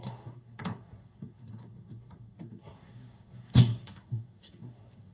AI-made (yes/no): yes